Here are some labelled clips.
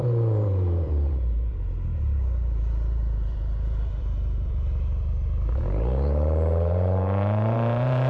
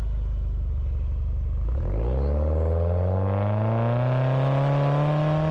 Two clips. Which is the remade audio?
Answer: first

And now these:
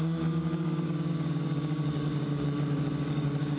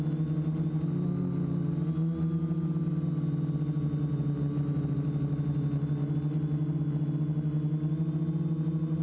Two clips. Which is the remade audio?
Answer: first